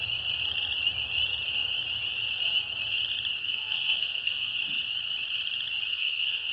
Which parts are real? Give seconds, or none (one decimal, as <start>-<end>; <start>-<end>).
0.0-3.4; 4.6-5.9